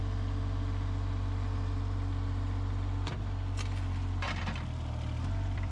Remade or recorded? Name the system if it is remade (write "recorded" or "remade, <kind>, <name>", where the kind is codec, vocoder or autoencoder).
remade, vocoder, BigVGAN v2